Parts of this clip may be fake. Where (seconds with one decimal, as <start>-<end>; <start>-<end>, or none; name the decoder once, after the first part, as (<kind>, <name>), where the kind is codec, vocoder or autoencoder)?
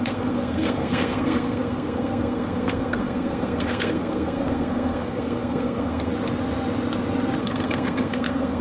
0.0-6.1 (codec, SNAC); 7.4-8.6